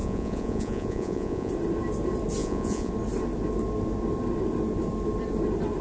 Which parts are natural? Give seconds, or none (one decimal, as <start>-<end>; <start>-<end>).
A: 1.5-2.4; 2.9-5.8